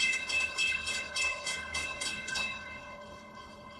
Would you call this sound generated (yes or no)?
yes